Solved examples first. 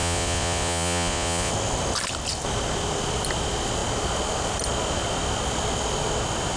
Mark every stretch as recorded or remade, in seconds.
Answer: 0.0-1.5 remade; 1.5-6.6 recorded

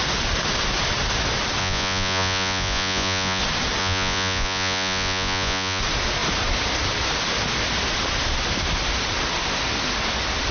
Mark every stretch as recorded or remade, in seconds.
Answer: 0.0-1.6 recorded; 1.6-3.4 remade; 3.4-3.8 recorded; 3.8-5.8 remade; 5.8-10.5 recorded

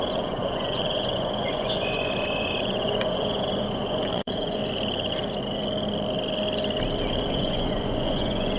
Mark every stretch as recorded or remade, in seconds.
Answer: 0.0-4.6 remade; 4.6-7.3 recorded; 7.3-8.6 remade

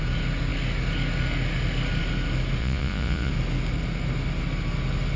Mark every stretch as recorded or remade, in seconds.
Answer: 0.0-2.6 recorded; 2.6-3.3 remade; 3.3-5.2 recorded

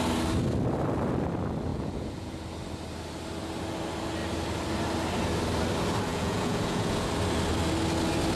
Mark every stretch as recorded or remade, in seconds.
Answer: 0.0-1.7 recorded; 1.7-2.3 remade; 2.3-6.1 recorded; 6.1-7.1 remade; 7.1-8.4 recorded

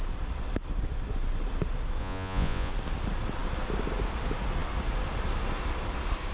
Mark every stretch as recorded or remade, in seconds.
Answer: 0.0-2.0 recorded; 2.0-2.7 remade; 2.7-6.3 recorded